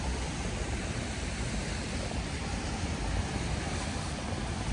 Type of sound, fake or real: fake